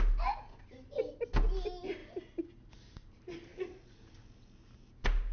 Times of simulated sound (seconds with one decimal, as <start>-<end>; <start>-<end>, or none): none